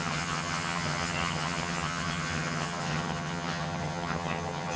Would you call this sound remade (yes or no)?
yes